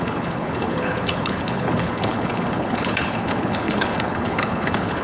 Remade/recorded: remade